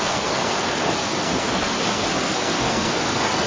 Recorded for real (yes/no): no